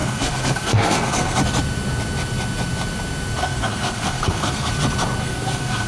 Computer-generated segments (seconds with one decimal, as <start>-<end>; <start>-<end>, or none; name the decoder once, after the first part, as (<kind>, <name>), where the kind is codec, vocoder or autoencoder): 0.0-1.4 (codec, SNAC); 3.4-4.7; 5.2-5.9